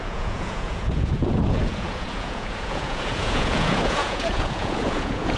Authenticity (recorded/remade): remade